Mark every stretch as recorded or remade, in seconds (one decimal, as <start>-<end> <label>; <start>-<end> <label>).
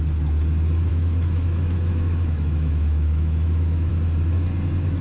0.0-0.9 recorded; 0.9-3.9 remade; 3.9-5.0 recorded